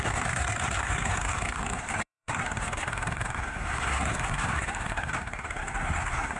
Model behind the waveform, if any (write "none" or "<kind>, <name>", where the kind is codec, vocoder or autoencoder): codec, SNAC